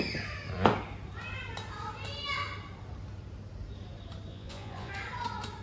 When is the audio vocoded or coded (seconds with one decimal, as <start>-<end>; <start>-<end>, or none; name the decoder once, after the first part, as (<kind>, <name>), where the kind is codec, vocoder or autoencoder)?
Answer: 4.3-4.9 (vocoder, Vocos)